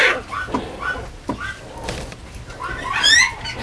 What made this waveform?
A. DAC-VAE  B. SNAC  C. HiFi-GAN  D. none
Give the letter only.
D